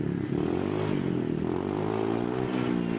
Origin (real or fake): real